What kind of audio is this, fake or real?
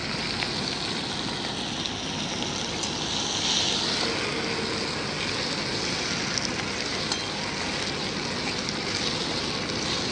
real